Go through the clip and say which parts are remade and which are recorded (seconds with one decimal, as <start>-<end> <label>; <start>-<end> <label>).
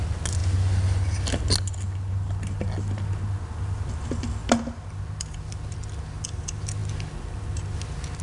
0.0-8.2 recorded